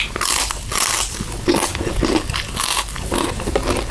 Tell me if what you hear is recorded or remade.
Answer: recorded